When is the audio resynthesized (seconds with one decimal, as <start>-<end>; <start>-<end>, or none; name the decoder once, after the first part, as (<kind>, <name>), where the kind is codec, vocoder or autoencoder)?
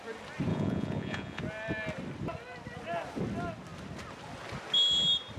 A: 0.5-1.4 (vocoder, Vocos)